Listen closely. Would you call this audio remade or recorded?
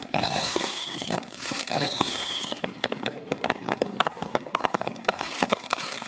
remade